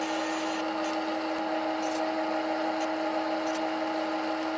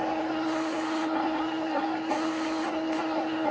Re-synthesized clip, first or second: second